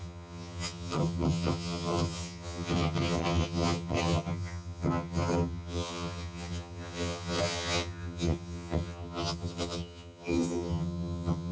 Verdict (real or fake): fake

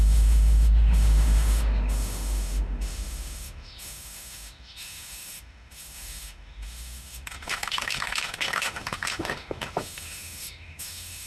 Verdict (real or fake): fake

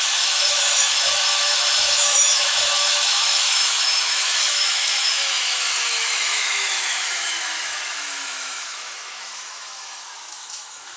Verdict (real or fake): fake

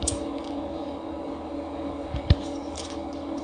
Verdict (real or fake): fake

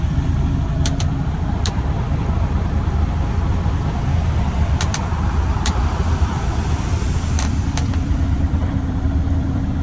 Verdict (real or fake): fake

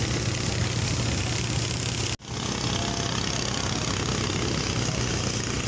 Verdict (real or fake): real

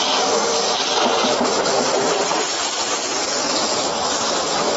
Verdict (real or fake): real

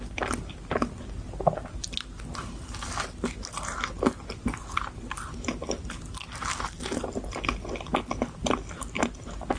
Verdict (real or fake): real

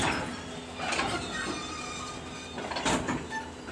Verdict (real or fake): real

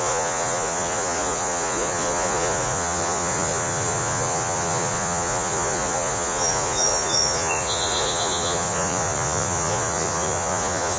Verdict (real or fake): fake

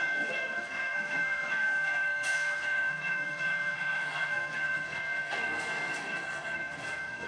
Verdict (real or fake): fake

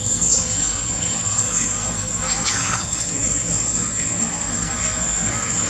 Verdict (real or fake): fake